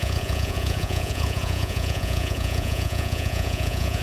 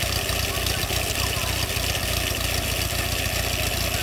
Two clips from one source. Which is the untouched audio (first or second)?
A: second